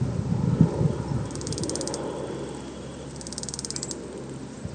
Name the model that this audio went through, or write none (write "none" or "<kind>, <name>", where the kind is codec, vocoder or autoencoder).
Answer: none